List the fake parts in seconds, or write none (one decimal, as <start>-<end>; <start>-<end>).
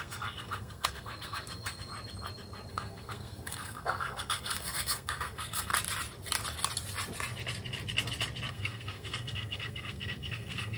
0.0-1.9; 2.7-5.7; 8.5-10.8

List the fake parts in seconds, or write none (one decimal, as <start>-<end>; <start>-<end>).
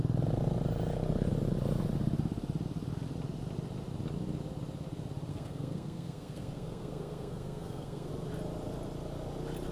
5.3-8.1